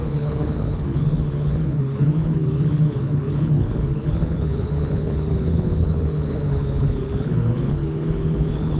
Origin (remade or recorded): remade